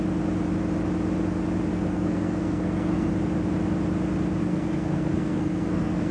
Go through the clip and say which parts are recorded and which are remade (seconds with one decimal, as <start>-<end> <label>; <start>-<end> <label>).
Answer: 0.0-1.7 recorded; 1.7-3.1 remade; 3.1-4.4 recorded; 4.4-6.1 remade